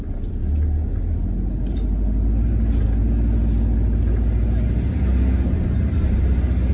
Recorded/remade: recorded